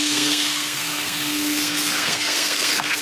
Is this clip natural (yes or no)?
no